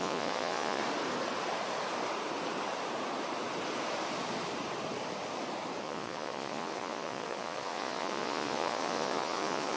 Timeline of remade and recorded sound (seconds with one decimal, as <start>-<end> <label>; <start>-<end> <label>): 0.0-0.8 remade; 0.8-5.8 recorded; 5.8-9.8 remade